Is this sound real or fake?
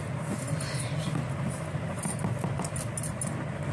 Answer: real